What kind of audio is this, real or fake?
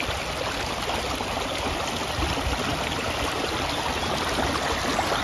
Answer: real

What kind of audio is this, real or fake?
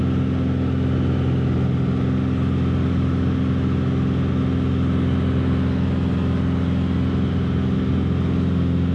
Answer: real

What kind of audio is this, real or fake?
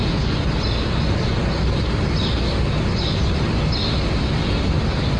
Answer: real